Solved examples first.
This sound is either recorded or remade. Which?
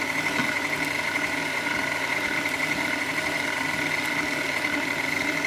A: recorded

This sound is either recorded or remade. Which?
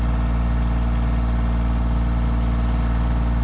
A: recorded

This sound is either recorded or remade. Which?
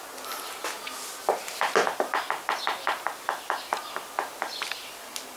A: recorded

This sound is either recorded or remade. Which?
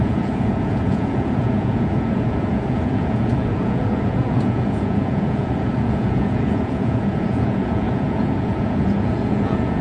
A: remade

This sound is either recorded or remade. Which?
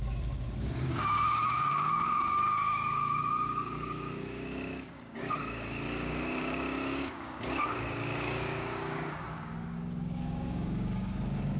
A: remade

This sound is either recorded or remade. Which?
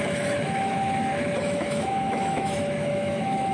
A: remade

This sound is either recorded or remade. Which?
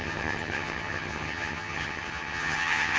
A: remade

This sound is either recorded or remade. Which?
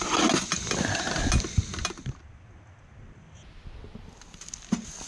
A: recorded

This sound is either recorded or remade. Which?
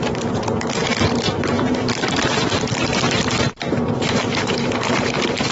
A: remade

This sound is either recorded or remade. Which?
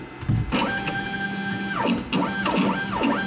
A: recorded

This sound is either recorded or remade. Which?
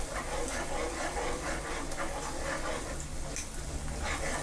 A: recorded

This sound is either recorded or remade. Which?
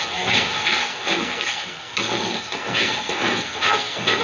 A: remade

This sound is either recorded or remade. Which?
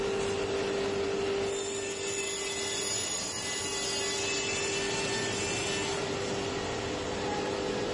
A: recorded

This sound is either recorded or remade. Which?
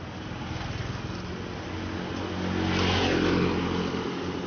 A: recorded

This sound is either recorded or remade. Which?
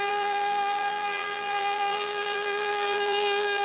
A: remade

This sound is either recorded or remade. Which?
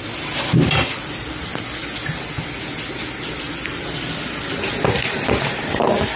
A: recorded